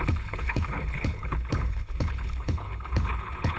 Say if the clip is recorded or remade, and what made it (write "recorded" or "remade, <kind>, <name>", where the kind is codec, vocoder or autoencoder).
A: remade, codec, HILCodec